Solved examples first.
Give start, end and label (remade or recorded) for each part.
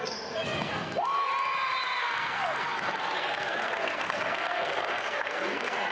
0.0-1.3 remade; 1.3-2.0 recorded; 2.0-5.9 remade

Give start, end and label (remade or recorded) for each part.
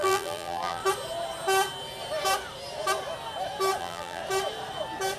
0.0-0.8 remade; 0.8-3.8 recorded; 3.8-4.2 remade; 4.2-5.2 recorded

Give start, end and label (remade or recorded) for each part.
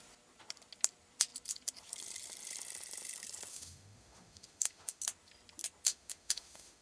0.0-3.5 recorded; 3.5-5.0 remade; 5.0-5.9 recorded; 5.9-6.8 remade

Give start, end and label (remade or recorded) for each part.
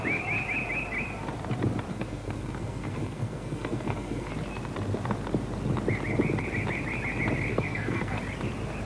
0.0-1.9 recorded; 1.9-4.3 remade; 4.3-7.5 recorded; 7.5-8.2 remade; 8.2-8.9 recorded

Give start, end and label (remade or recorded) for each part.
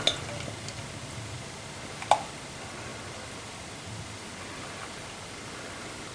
0.0-6.1 recorded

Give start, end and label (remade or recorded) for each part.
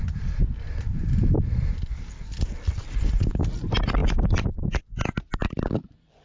0.0-6.2 recorded